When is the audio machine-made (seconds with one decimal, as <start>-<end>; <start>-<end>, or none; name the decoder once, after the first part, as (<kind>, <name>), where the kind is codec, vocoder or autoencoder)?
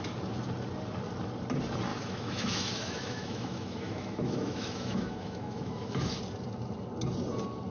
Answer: 1.9-6.2 (autoencoder, DAC-VAE)